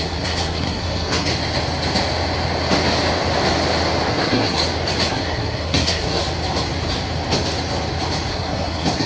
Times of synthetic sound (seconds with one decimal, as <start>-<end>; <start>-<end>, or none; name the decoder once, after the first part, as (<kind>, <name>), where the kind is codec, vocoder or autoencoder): 0.0-1.3 (codec, SNAC); 4.1-4.6; 5.1-6.2; 8.3-9.1